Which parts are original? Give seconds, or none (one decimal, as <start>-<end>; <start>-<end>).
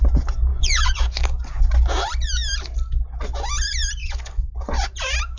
0.0-0.5; 1.6-4.0; 4.9-5.4